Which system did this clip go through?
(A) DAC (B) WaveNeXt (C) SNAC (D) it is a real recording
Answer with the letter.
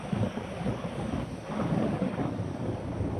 A